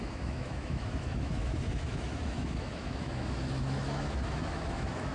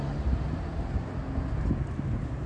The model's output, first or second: first